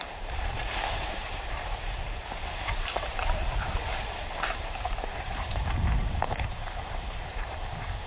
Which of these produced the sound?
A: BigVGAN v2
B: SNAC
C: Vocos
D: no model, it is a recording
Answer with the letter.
A